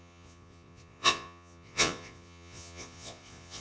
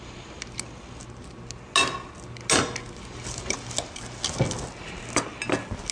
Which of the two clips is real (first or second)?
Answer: second